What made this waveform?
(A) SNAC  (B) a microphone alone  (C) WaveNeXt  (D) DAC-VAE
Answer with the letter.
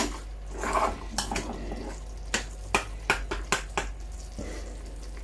B